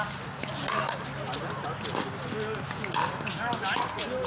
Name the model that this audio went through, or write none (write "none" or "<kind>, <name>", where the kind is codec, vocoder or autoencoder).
none